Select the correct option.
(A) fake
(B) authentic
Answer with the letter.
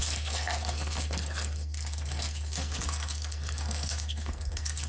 A